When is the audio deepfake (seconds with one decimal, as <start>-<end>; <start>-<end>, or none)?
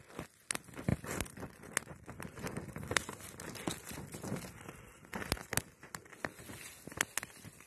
none